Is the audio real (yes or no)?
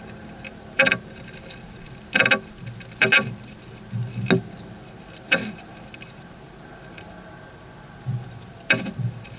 yes